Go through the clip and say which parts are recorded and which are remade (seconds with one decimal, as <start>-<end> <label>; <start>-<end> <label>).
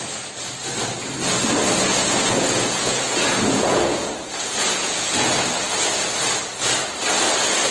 0.0-1.9 recorded; 1.9-5.3 remade; 5.3-7.7 recorded